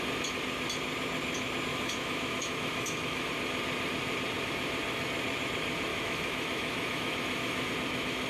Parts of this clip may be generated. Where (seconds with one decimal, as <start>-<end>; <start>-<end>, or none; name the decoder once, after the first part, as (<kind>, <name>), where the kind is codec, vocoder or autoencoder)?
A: 1.7-3.3 (autoencoder, DAC-VAE); 5.9-7.7